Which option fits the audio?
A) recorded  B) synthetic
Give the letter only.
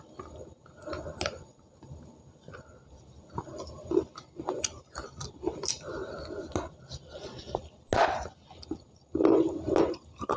A